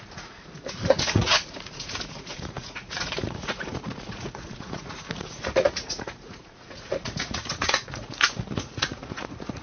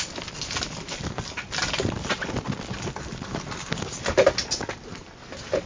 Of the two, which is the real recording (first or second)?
second